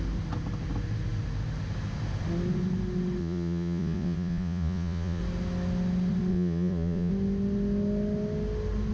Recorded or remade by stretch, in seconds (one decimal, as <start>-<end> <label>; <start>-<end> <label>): 0.0-3.2 recorded; 3.2-5.2 remade; 5.2-6.3 recorded; 6.3-7.1 remade; 7.1-8.9 recorded